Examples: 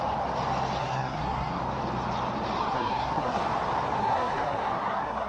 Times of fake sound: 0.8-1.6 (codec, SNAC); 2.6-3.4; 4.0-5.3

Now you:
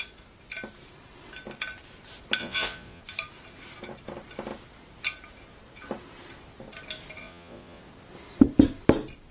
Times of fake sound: 2.4-3.0 (vocoder, Vocos); 7.2-7.8

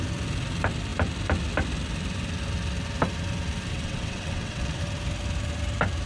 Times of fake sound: 3.7-4.8 (vocoder, WaveNeXt)

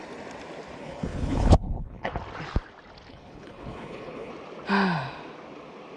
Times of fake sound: 0.8-2.1 (codec, HILCodec); 3.1-4.3

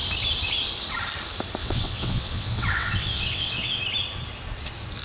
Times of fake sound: 1.6-3.8 (vocoder, WaveNeXt)

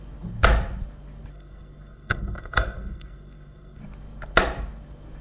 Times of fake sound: 1.3-3.8 (codec, SNAC)

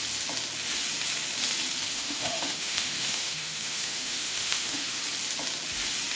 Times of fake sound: 1.9-5.0 (autoencoder, DAC-VAE)

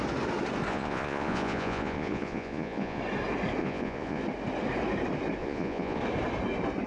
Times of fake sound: 0.7-3.0 (vocoder, Vocos); 3.6-4.2; 5.4-6.0